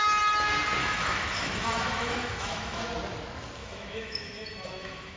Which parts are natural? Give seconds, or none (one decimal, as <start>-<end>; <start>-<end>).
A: 0.0-0.8; 2.8-3.6